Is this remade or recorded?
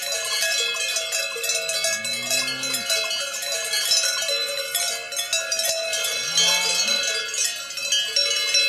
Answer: recorded